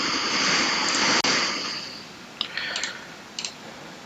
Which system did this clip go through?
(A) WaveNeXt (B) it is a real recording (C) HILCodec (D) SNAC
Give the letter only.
B